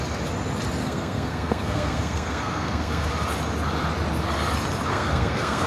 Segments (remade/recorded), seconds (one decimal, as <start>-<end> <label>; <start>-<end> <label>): 0.0-0.8 recorded; 0.8-3.1 remade; 3.1-4.9 recorded; 4.9-5.7 remade

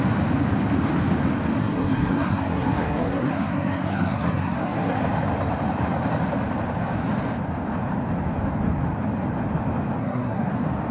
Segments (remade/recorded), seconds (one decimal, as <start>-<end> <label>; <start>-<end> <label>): 0.0-1.6 recorded; 1.6-5.0 remade; 5.0-10.0 recorded; 10.0-10.5 remade; 10.5-10.9 recorded

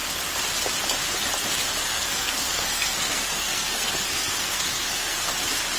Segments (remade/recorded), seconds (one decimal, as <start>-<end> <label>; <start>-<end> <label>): 0.0-1.8 recorded; 1.8-5.3 remade; 5.3-5.8 recorded

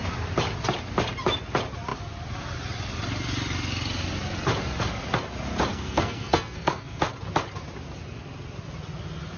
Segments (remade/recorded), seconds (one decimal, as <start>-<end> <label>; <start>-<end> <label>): 0.0-5.7 recorded; 5.7-7.0 remade; 7.0-9.4 recorded

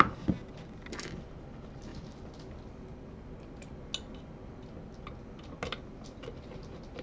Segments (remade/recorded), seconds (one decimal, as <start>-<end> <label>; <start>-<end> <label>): 0.0-7.0 recorded

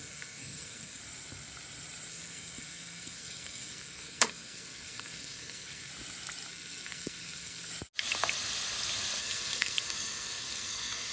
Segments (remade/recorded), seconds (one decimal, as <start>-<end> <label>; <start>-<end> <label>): 0.0-1.0 remade; 1.0-2.1 recorded; 2.1-5.9 remade; 5.9-6.5 recorded; 6.5-7.7 remade; 7.7-9.2 recorded; 9.2-11.1 remade

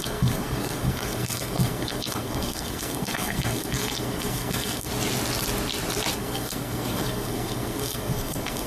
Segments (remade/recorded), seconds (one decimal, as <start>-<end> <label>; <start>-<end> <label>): 0.0-4.9 remade; 4.9-6.1 recorded; 6.1-8.7 remade

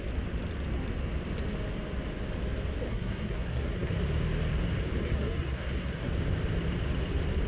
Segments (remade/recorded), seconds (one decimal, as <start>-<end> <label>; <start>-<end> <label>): 0.0-2.9 recorded; 2.9-3.9 remade; 3.9-5.0 recorded; 5.0-6.1 remade; 6.1-7.5 recorded